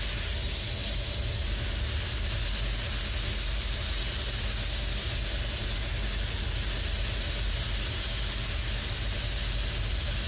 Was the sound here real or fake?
real